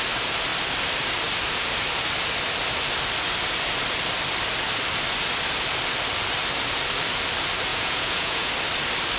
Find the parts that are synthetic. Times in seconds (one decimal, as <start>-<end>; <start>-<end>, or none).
7.7-8.5